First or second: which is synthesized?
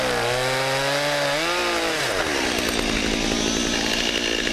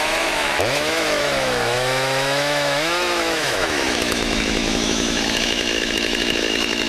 second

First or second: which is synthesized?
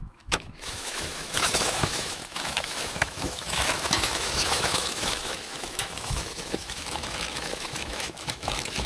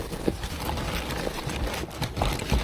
first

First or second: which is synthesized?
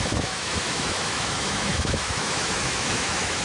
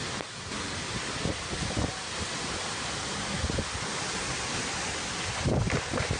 first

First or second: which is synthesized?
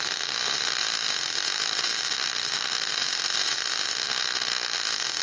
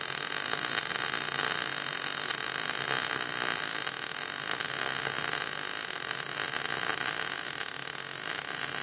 first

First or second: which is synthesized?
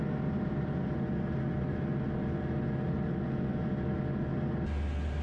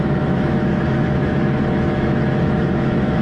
second